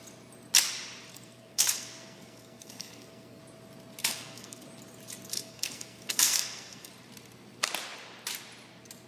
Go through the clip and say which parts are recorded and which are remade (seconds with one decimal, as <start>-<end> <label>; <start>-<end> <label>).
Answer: 0.0-1.1 recorded; 1.1-3.4 remade; 3.4-4.0 recorded; 4.0-4.7 remade; 4.7-5.3 recorded; 5.3-6.9 remade; 6.9-9.1 recorded